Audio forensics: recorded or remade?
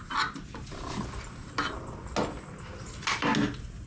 recorded